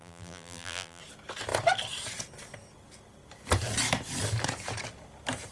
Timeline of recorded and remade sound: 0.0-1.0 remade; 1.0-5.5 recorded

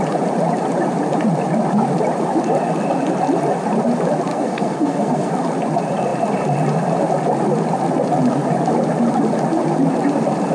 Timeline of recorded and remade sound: 0.0-4.3 recorded; 4.3-5.3 remade; 5.3-10.5 recorded

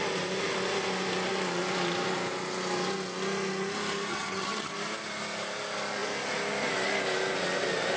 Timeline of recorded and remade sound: 0.0-4.1 recorded; 4.1-4.7 remade; 4.7-8.0 recorded